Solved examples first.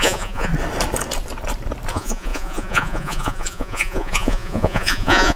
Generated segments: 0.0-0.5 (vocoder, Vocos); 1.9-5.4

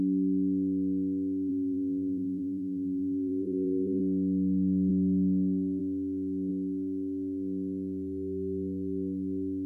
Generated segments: 1.5-4.0 (vocoder, BigVGAN v2)

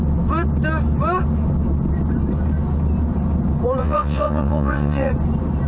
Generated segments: 3.8-5.1 (vocoder, WaveNeXt)

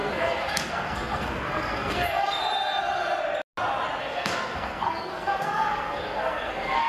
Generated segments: 0.0-2.4 (codec, SNAC); 4.0-6.9

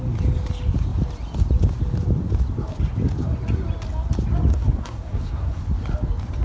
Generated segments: 4.5-5.6 (codec, SNAC)